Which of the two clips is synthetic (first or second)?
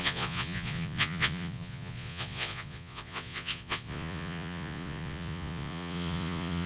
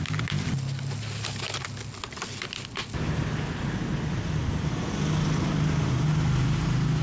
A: first